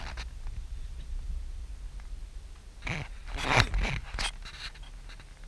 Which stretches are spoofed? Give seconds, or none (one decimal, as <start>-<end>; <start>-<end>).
none

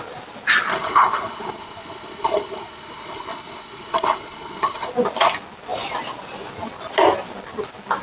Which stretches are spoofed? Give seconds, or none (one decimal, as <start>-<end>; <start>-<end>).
0.7-4.9